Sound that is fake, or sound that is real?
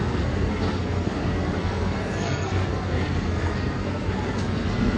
fake